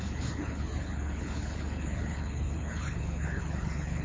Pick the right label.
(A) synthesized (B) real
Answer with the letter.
A